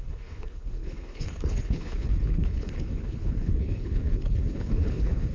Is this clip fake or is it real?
fake